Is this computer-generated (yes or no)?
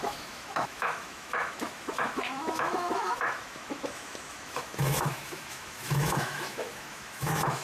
yes